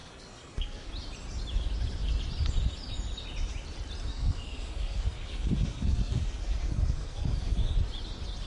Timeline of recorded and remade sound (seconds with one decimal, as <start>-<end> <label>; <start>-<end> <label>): 0.0-0.9 remade; 0.9-4.1 recorded; 4.1-7.7 remade; 7.7-8.5 recorded